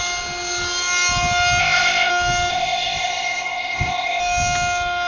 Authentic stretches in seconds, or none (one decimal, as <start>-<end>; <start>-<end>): 0.0-1.6; 2.1-2.5; 4.2-5.1